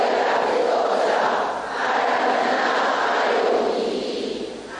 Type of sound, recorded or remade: recorded